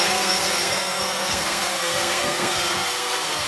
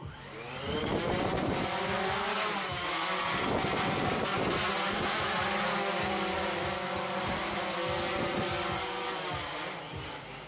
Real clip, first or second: second